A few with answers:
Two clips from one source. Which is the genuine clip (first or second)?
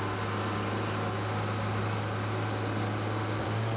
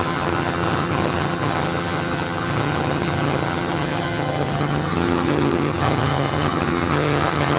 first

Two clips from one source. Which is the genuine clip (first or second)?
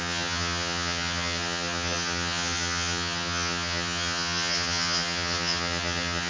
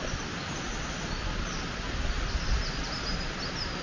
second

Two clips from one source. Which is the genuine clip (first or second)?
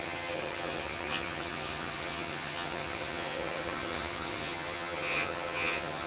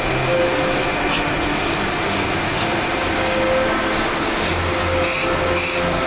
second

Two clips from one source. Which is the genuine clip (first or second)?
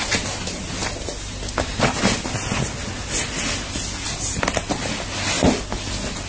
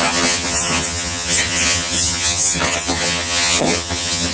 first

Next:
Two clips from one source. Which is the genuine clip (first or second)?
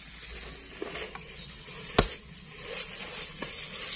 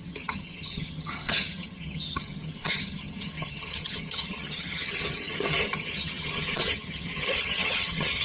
first